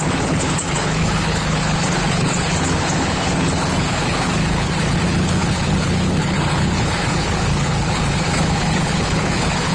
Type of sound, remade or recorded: remade